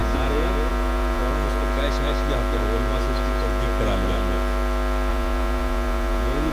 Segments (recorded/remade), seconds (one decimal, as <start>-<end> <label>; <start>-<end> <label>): 0.0-1.2 remade; 1.2-5.1 recorded; 5.1-6.5 remade